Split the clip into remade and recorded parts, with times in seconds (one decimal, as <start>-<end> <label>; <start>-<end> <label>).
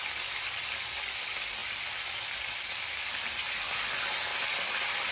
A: 0.0-4.3 recorded; 4.3-5.1 remade